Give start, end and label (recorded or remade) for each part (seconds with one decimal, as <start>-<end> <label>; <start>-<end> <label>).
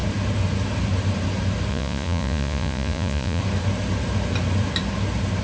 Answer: 0.0-1.7 recorded; 1.7-3.4 remade; 3.4-5.4 recorded